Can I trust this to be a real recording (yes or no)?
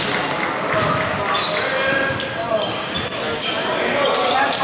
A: yes